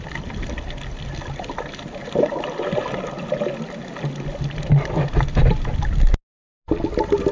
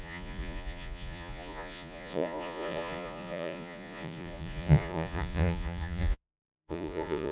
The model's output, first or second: second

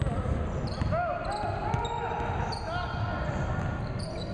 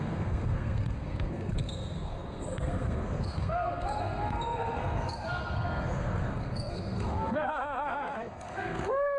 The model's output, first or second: second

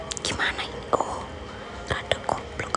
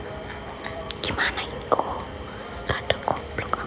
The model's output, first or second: second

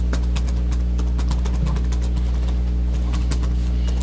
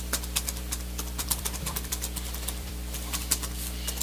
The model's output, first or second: second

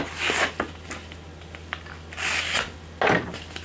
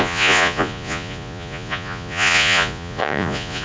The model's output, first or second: second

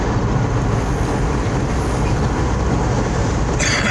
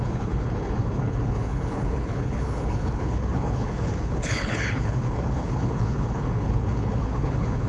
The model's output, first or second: second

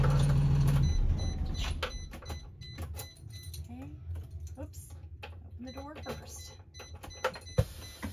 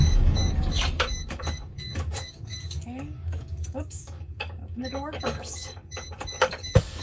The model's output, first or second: second